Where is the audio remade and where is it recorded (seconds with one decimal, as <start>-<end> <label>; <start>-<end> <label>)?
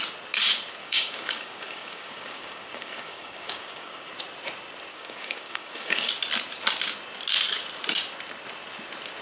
0.0-0.8 recorded; 0.8-4.1 remade; 4.1-4.9 recorded; 4.9-6.1 remade; 6.1-9.2 recorded